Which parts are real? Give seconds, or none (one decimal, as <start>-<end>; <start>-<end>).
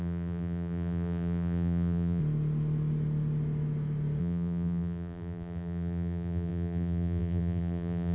2.2-4.2